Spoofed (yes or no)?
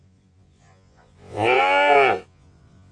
yes